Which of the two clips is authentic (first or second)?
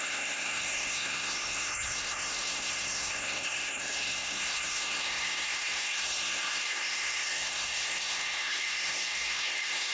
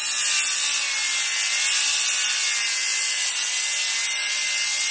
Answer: second